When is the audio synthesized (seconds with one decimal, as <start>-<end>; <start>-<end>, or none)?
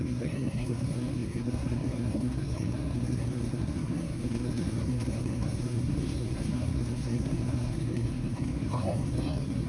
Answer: 0.0-9.7